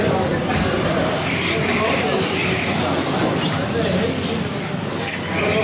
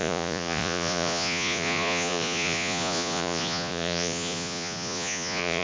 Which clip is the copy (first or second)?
second